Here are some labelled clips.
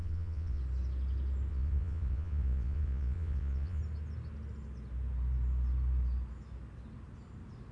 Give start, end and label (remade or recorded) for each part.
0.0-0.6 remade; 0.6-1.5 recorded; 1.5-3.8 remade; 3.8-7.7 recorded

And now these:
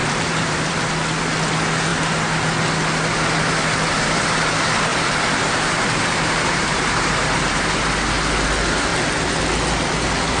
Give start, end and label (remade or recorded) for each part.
0.0-0.8 remade; 0.8-4.9 recorded; 4.9-7.6 remade; 7.6-10.4 recorded

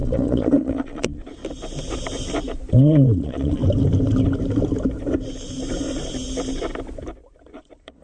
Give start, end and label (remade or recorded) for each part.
0.0-1.4 remade; 1.4-2.7 recorded; 2.7-3.6 remade; 3.6-7.4 recorded; 7.4-8.0 remade